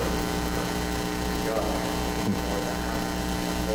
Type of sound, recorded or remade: recorded